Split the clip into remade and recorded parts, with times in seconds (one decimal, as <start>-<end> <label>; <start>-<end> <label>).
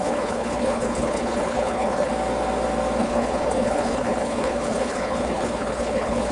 0.0-2.1 remade; 2.1-3.0 recorded; 3.0-6.3 remade